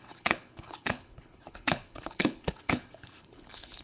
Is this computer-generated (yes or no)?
yes